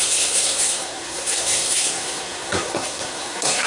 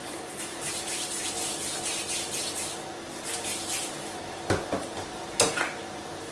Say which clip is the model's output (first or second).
first